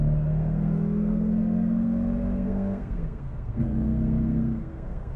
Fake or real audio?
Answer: fake